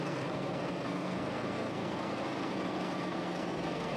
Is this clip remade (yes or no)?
yes